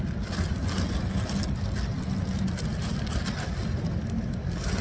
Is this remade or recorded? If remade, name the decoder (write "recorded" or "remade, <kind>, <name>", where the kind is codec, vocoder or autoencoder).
recorded